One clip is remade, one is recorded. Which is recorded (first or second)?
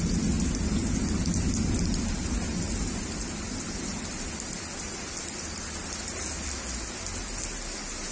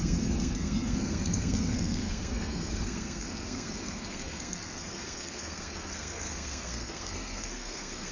first